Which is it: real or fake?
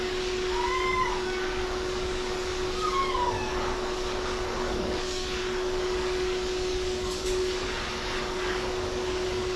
fake